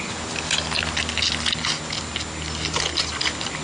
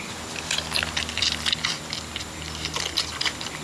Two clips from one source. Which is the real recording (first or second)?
first